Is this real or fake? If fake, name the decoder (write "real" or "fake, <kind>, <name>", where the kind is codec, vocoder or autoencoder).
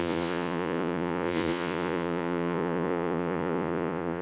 fake, vocoder, Vocos